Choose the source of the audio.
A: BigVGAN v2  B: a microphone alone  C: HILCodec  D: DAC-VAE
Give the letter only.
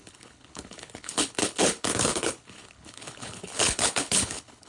C